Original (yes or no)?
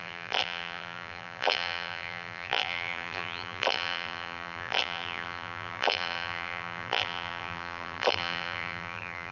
no